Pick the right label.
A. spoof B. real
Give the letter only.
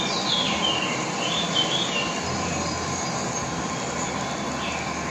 B